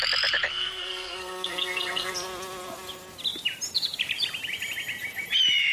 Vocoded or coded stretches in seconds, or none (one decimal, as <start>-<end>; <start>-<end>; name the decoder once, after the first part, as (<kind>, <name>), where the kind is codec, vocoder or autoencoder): 0.5-2.1 (codec, SNAC)